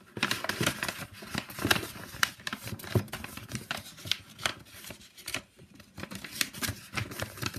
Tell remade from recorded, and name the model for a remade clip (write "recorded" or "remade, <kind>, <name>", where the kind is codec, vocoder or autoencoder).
remade, vocoder, BigVGAN v2